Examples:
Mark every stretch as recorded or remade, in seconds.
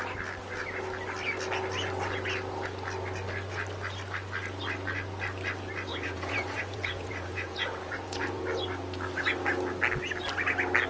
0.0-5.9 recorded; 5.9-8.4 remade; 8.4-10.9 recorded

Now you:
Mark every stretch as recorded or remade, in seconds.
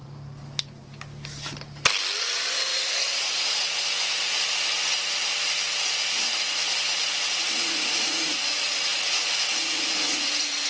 0.0-2.7 recorded; 2.7-3.6 remade; 3.6-6.0 recorded; 6.0-10.7 remade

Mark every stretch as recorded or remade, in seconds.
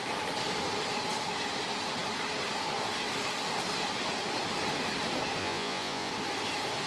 0.0-5.4 recorded; 5.4-6.1 remade; 6.1-6.9 recorded